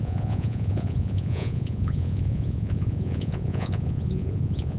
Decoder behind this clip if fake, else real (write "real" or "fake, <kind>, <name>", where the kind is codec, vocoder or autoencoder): fake, vocoder, Vocos